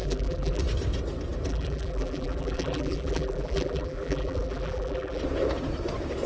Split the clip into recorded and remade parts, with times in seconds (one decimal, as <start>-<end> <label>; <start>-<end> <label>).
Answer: 0.0-0.6 remade; 0.6-1.5 recorded; 1.5-5.2 remade; 5.2-6.3 recorded